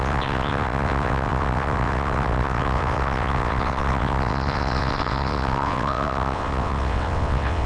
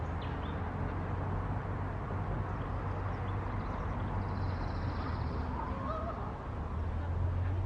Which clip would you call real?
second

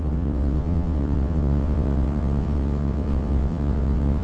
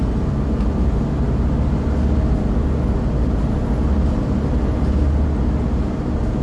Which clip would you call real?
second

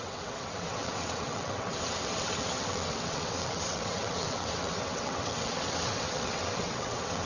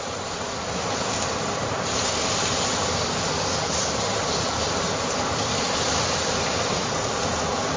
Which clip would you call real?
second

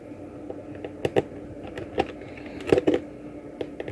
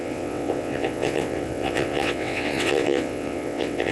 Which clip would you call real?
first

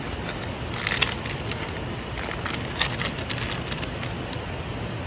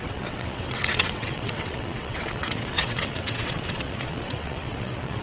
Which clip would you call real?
first